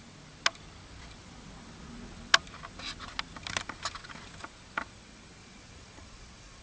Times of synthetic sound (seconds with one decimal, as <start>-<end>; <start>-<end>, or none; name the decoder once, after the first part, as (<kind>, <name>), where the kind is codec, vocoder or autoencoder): 5.4-6.6 (vocoder, Vocos)